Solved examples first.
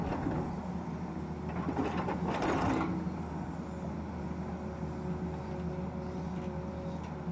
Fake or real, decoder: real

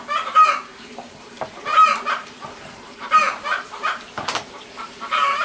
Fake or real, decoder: fake, vocoder, BigVGAN v2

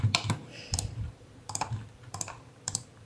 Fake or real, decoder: fake, vocoder, BigVGAN v2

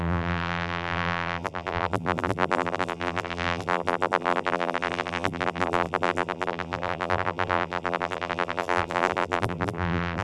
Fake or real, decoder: fake, vocoder, BigVGAN v2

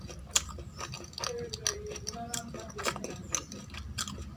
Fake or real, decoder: real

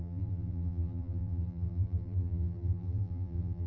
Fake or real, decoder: fake, vocoder, BigVGAN v2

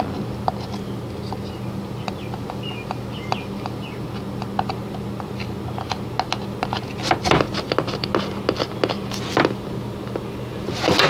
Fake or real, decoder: real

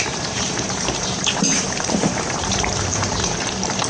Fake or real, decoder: fake, vocoder, BigVGAN v2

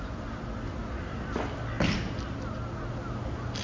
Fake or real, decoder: real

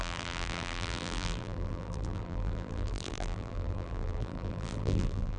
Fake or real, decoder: fake, vocoder, BigVGAN v2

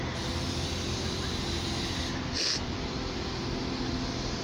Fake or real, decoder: fake, vocoder, BigVGAN v2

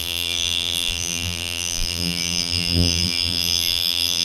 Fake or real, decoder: fake, vocoder, BigVGAN v2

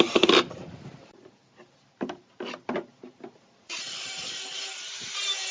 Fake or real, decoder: fake, vocoder, BigVGAN v2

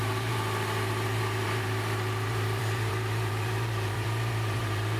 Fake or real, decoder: fake, vocoder, BigVGAN v2